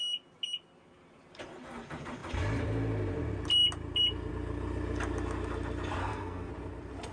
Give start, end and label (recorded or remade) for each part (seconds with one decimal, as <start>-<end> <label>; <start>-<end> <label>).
0.0-6.0 recorded; 6.0-6.5 remade; 6.5-7.1 recorded

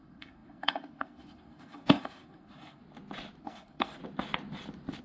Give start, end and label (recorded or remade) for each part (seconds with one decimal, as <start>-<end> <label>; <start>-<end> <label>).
0.0-2.8 remade; 2.8-3.4 recorded; 3.4-4.0 remade; 4.0-5.0 recorded

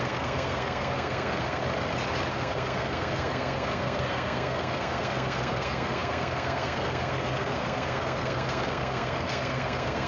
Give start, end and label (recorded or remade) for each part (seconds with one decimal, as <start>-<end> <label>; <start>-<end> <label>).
0.0-1.6 remade; 1.6-2.3 recorded; 2.3-10.1 remade